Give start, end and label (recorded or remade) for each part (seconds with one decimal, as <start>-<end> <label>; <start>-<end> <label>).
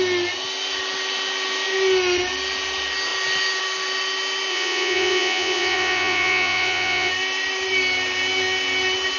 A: 0.0-4.5 recorded; 4.5-7.1 remade; 7.1-9.2 recorded